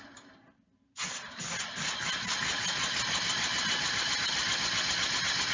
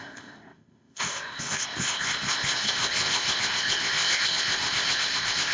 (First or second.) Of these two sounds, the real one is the first